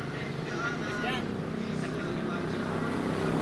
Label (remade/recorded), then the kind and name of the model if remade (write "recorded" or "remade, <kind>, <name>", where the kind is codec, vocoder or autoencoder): recorded